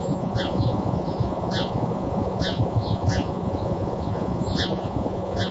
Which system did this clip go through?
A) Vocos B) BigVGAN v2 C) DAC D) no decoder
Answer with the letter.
A